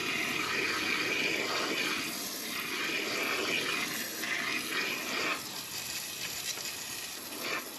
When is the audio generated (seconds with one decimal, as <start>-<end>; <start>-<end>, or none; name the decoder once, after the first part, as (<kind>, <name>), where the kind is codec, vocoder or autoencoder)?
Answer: 5.3-7.1 (vocoder, BigVGAN v2)